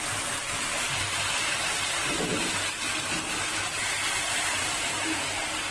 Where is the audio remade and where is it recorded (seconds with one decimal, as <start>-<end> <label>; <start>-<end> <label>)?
0.0-5.7 recorded